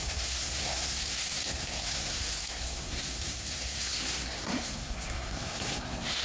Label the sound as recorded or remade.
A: remade